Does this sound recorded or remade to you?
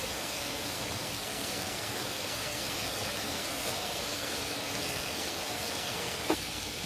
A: remade